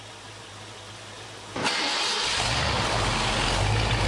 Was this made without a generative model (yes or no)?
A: yes